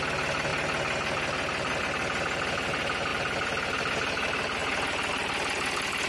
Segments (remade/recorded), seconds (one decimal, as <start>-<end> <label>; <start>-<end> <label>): 0.0-6.1 recorded